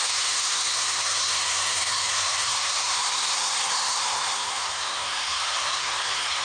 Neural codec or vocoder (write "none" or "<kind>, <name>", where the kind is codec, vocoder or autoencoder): codec, SNAC